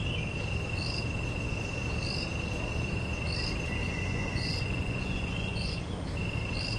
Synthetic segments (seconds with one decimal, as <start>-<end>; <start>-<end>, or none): 3.8-5.8